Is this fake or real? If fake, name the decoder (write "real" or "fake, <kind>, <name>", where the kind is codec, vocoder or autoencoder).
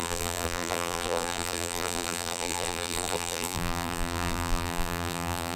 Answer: fake, vocoder, BigVGAN v2